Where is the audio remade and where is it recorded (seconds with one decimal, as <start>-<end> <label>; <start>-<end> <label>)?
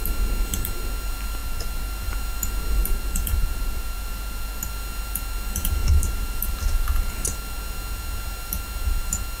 0.0-1.4 recorded; 1.4-2.1 remade; 2.1-2.8 recorded; 2.8-4.7 remade; 4.7-5.8 recorded; 5.8-7.1 remade; 7.1-9.4 recorded